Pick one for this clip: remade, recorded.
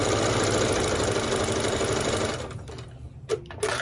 recorded